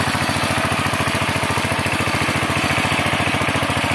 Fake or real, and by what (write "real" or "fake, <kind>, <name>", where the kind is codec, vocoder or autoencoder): real